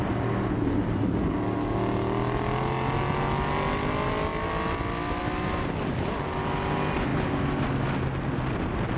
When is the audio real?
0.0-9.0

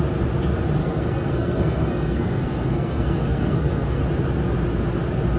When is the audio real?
0.0-0.8; 4.0-5.4

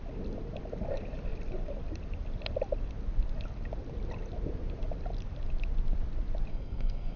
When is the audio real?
0.0-6.5

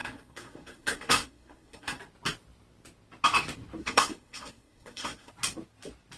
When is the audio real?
2.0-3.8; 5.3-6.2

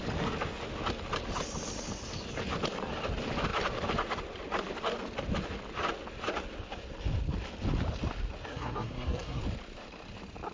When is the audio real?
0.0-8.5; 9.4-10.5

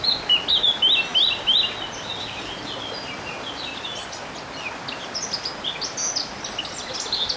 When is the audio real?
0.0-7.4